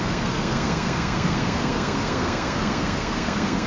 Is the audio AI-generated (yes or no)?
yes